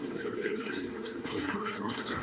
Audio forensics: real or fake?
fake